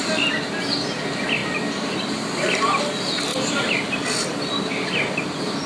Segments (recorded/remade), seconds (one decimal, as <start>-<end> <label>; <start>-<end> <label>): 0.0-5.7 recorded